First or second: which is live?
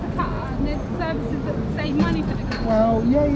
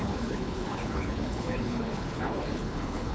first